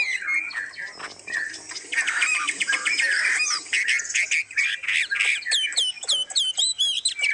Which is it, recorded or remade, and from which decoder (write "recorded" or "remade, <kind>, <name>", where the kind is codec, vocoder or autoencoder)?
recorded